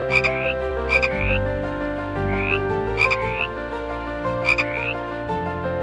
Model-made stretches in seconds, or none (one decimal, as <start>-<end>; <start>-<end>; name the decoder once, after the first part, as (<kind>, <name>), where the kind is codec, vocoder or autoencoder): none